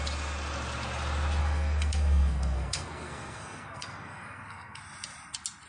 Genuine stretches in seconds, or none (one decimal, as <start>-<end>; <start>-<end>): 0.0-1.4; 4.8-5.7